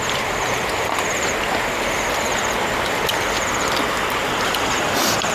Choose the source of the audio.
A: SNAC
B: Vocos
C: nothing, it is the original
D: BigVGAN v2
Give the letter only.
D